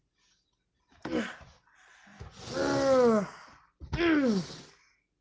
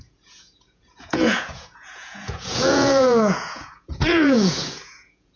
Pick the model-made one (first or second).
second